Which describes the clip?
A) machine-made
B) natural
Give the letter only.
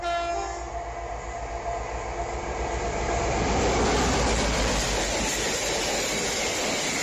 B